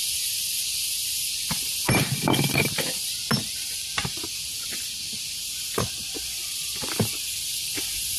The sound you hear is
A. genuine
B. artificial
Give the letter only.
B